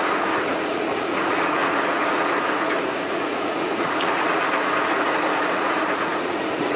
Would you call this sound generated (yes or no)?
yes